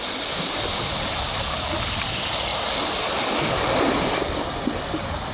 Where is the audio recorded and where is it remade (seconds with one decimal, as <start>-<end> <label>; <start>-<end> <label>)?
0.0-2.5 recorded; 2.5-4.4 remade; 4.4-5.3 recorded